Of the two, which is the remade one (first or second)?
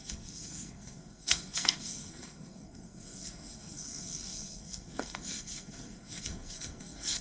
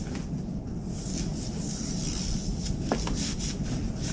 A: first